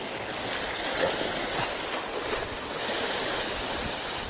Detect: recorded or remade recorded